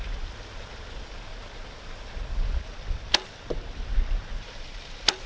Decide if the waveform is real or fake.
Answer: real